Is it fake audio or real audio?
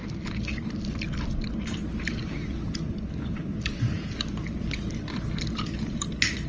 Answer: fake